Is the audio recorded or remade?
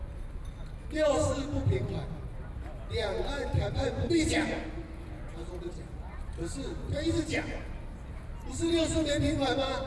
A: recorded